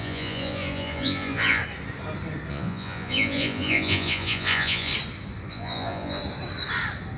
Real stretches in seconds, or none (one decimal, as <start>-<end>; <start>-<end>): 1.6-2.5; 4.9-5.5; 6.2-7.2